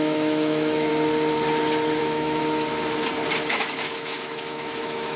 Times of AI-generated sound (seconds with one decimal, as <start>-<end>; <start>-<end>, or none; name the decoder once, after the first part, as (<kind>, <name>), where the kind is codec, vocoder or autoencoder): 0.0-0.9 (autoencoder, DAC-VAE); 2.0-2.4; 3.5-5.2